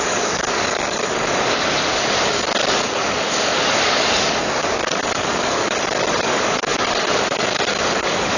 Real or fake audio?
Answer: fake